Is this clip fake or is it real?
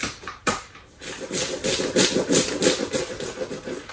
real